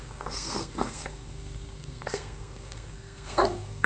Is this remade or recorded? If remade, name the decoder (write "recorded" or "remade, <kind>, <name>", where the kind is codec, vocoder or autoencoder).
remade, codec, SNAC